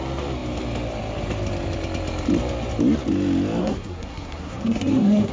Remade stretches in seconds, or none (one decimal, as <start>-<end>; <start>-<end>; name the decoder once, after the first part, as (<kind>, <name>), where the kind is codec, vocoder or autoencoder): 3.6-5.3 (codec, SNAC)